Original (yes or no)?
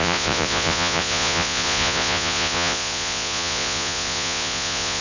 no